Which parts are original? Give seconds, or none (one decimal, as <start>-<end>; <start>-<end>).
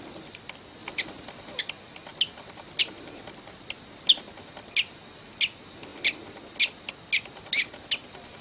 0.0-8.4